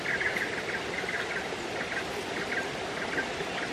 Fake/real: real